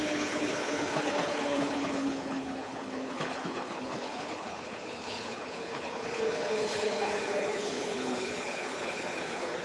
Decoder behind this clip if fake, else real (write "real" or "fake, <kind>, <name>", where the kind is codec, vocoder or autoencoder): fake, codec, HILCodec